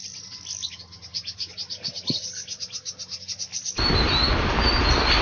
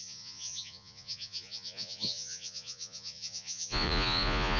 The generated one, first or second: second